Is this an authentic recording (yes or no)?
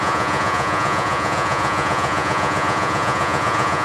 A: no